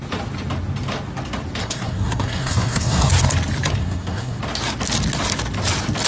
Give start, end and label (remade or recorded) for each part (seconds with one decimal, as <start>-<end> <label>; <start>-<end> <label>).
0.0-1.6 recorded; 1.6-3.1 remade; 3.1-3.8 recorded; 3.8-4.4 remade; 4.4-6.1 recorded